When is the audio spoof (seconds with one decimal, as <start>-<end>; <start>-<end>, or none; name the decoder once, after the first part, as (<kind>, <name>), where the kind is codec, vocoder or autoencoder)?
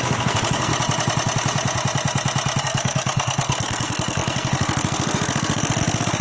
0.0-0.7 (codec, SNAC); 2.6-6.2